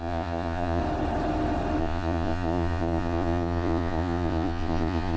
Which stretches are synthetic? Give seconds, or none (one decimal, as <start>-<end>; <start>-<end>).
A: 0.0-0.8; 1.8-5.2